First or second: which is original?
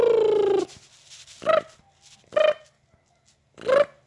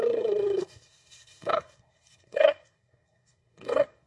first